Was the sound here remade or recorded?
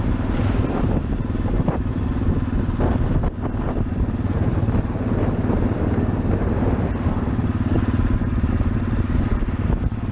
recorded